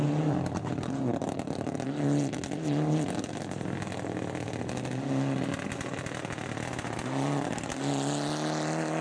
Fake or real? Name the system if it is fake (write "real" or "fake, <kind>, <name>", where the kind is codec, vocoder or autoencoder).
real